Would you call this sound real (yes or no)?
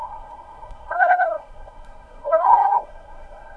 no